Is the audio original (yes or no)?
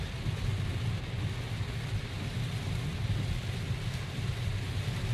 yes